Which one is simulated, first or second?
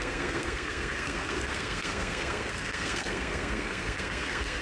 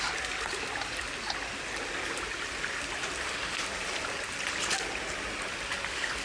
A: first